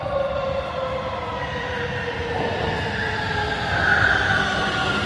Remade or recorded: recorded